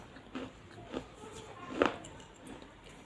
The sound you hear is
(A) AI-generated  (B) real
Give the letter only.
B